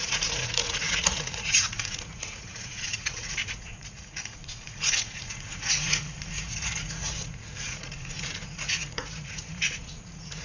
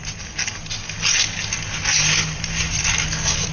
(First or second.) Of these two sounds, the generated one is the first